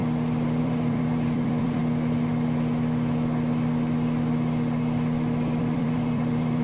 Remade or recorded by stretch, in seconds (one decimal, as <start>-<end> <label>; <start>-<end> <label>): 0.0-0.6 recorded; 0.6-1.8 remade; 1.8-5.6 recorded; 5.6-6.6 remade